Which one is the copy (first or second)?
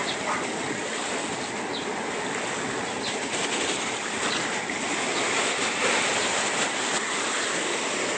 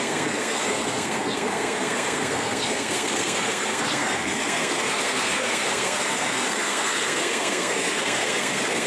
second